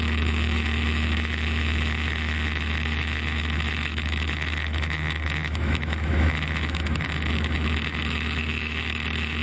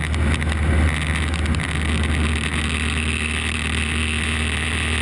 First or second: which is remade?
first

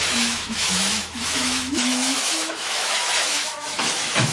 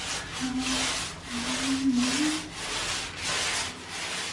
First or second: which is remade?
first